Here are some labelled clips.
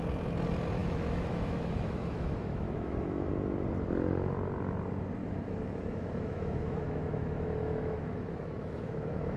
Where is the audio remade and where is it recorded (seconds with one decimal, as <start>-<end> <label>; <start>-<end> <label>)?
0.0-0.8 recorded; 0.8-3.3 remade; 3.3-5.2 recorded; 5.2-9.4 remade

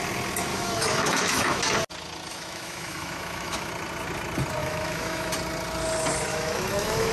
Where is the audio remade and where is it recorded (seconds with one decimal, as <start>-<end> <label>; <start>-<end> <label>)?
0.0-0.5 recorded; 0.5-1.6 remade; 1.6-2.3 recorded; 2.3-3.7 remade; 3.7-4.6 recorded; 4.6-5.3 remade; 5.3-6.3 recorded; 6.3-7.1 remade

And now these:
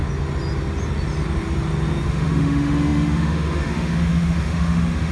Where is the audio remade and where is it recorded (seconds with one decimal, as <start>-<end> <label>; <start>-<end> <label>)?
0.0-2.1 recorded; 2.1-5.1 remade

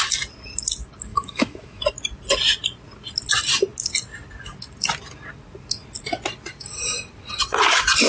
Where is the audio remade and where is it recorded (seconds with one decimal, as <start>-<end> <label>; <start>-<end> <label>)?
0.0-1.1 recorded; 1.1-1.8 remade; 1.8-8.1 recorded

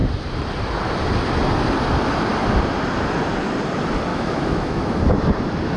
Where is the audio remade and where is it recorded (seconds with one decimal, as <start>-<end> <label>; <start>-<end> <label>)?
0.0-4.1 recorded; 4.1-5.0 remade; 5.0-5.8 recorded